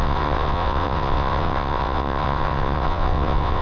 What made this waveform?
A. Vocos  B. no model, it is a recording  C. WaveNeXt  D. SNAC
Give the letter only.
C